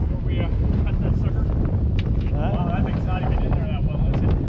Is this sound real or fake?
real